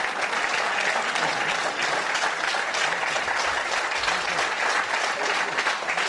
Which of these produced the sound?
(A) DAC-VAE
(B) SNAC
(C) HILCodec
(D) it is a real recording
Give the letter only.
D